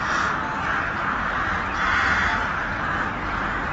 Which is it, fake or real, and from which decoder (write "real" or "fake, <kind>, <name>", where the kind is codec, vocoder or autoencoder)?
real